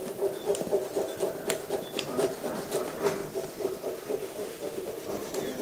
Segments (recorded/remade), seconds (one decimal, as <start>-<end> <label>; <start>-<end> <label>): 0.0-4.2 recorded; 4.2-4.9 remade; 4.9-5.6 recorded